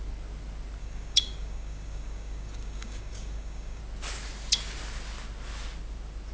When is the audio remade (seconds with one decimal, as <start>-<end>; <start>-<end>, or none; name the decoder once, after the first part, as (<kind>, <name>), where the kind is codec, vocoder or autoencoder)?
0.8-3.8 (codec, DAC)

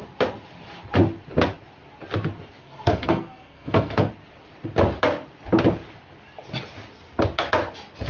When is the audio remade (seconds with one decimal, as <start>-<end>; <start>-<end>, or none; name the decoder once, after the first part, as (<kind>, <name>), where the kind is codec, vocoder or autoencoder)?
2.6-4.1 (codec, SNAC)